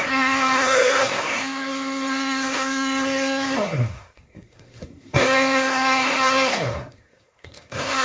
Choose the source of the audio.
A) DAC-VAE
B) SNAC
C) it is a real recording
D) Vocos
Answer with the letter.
B